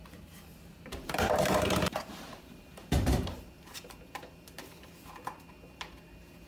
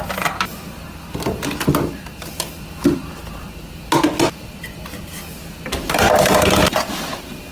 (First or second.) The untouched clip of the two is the second